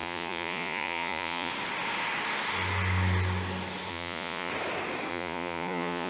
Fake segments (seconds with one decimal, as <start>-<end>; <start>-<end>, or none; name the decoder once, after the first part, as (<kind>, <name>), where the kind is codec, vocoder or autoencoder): 0.0-1.5 (vocoder, Vocos); 3.9-4.5; 5.1-6.1